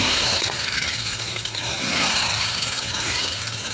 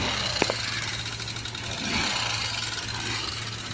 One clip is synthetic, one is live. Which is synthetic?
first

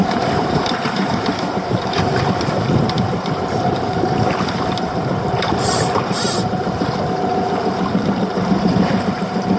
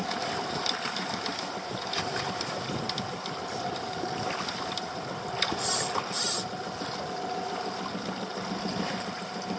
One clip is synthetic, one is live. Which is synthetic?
first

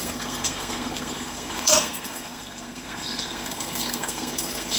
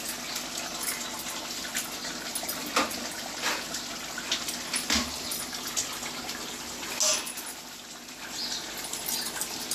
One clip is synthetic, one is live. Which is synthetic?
first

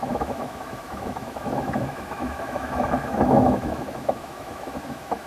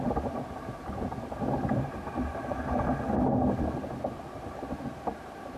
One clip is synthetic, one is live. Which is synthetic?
first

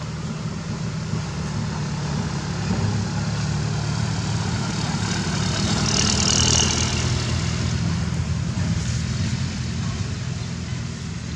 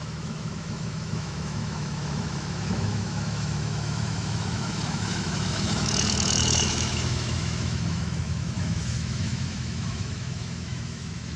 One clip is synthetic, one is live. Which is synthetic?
second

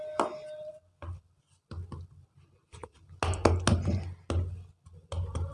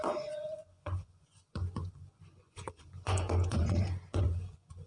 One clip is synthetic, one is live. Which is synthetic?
second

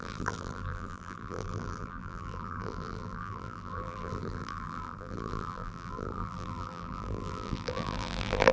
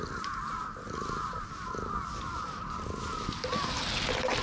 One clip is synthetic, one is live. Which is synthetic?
first